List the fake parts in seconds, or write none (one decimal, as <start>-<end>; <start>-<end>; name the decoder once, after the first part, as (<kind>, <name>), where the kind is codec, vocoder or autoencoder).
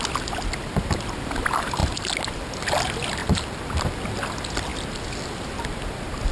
none